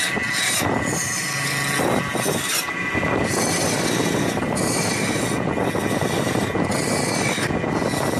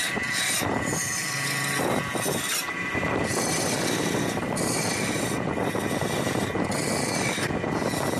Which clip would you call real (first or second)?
first